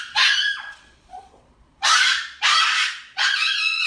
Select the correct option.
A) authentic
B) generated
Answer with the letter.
B